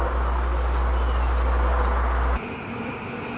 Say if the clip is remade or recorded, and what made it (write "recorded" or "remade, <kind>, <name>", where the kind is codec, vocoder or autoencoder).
recorded